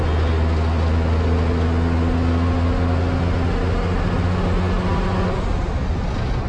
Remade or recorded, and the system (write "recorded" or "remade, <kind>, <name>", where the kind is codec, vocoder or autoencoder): recorded